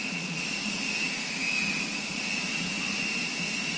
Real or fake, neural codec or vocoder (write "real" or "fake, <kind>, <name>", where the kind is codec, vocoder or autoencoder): fake, vocoder, Vocos